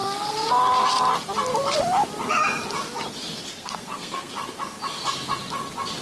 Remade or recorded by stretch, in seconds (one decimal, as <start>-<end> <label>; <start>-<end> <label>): 0.0-0.5 remade; 0.5-3.5 recorded; 3.5-4.3 remade; 4.3-6.0 recorded